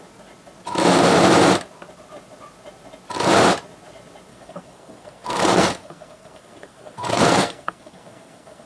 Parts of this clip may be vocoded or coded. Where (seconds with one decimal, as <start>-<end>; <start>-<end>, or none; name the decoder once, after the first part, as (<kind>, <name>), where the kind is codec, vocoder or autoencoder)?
4.3-8.7 (codec, SNAC)